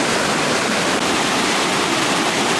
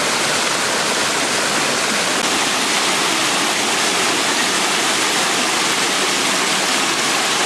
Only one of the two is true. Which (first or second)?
second